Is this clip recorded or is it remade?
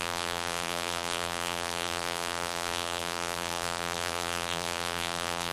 remade